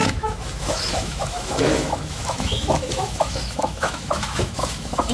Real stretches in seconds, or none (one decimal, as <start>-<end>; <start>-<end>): none